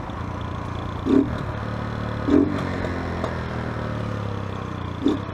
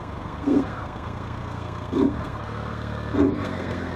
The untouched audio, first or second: first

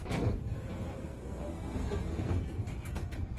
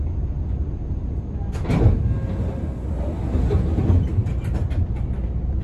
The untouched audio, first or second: second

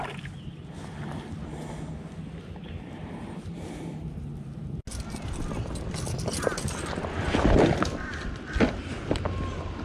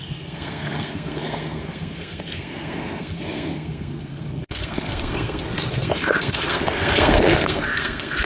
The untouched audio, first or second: first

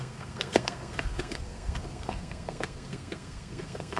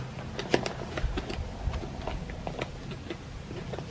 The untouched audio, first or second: second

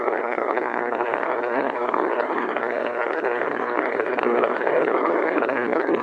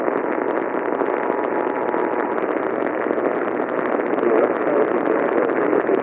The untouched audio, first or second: second